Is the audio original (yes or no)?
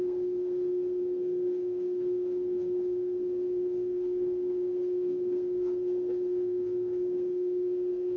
no